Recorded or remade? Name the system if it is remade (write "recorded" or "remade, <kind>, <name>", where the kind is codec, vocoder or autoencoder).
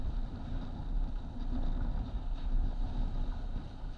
recorded